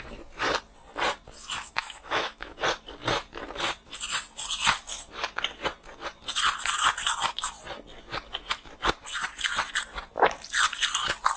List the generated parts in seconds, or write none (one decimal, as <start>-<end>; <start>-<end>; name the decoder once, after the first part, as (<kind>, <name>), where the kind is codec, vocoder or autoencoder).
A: 1.8-2.6 (autoencoder, DAC-VAE)

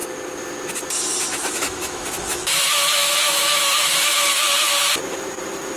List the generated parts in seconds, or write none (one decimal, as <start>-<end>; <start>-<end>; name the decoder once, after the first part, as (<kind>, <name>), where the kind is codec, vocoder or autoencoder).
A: 1.3-4.8 (autoencoder, DAC-VAE)

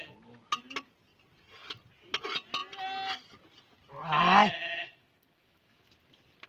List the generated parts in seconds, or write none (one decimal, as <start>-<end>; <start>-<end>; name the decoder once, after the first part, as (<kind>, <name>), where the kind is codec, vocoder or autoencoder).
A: 4.8-5.8 (autoencoder, DAC-VAE)

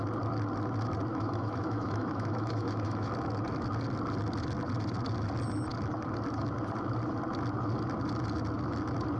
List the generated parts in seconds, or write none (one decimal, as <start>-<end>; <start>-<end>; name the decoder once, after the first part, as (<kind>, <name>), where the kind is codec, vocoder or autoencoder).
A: 1.1-3.1 (autoencoder, DAC-VAE)